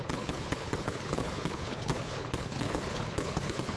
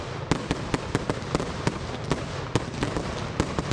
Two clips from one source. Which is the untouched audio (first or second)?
second